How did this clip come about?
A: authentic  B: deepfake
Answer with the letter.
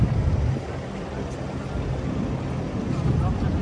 A